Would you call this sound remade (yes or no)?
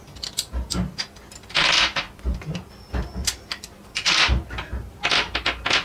no